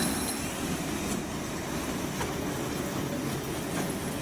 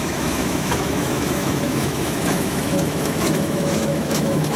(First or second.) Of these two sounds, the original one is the first